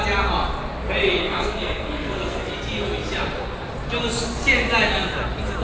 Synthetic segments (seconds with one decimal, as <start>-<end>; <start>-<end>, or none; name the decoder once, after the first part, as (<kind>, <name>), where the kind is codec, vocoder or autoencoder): 1.2-2.5 (codec, SNAC)